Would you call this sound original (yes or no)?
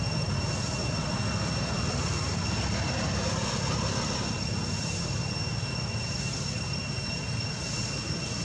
yes